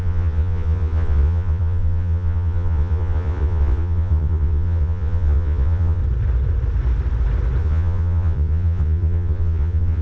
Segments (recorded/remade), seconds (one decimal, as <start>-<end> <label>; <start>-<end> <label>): 0.0-6.0 remade; 6.0-7.6 recorded; 7.6-10.0 remade